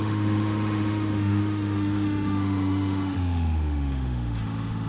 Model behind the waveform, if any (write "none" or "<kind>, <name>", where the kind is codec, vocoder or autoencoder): autoencoder, DAC-VAE